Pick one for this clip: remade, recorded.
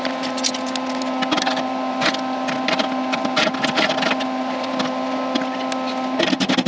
recorded